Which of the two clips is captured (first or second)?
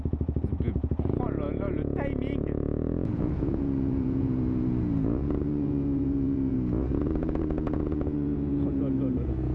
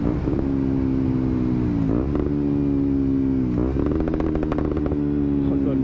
second